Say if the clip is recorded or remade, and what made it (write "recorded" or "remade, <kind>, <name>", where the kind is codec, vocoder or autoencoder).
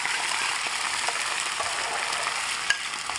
remade, vocoder, BigVGAN v2